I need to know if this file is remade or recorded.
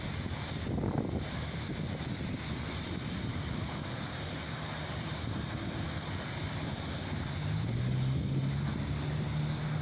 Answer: recorded